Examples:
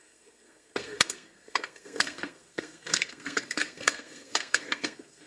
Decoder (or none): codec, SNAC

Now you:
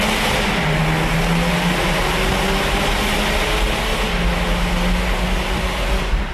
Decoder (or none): none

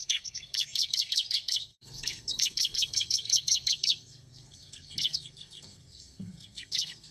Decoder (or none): codec, SNAC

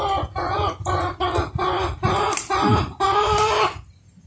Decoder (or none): none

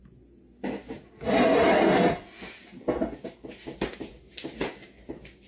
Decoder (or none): none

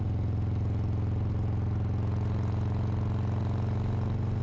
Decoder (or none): none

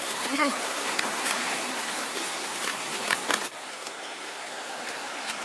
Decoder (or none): codec, SNAC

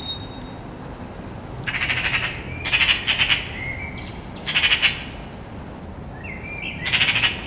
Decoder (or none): none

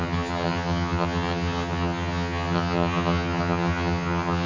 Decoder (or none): vocoder, HiFi-GAN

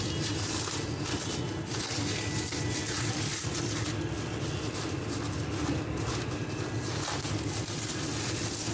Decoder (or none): none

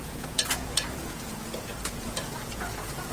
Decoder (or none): vocoder, Vocos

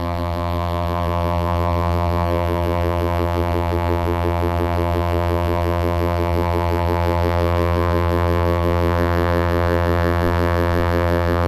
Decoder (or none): vocoder, BigVGAN v2